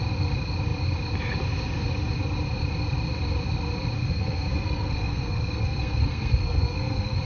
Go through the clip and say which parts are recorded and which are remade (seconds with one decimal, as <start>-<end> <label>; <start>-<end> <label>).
0.0-4.0 recorded; 4.0-7.2 remade